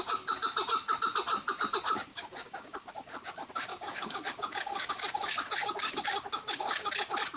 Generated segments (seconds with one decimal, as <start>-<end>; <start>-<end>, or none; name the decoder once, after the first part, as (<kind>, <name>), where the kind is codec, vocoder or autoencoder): 2.1-2.9 (codec, DAC); 3.7-6.9